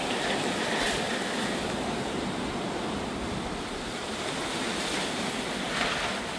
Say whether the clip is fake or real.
real